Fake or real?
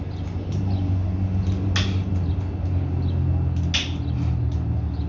real